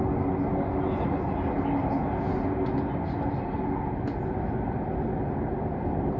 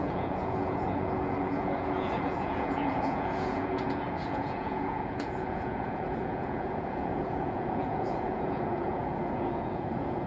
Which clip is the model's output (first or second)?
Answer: second